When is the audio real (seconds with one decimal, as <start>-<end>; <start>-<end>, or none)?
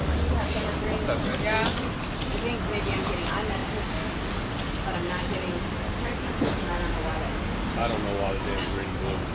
0.0-9.3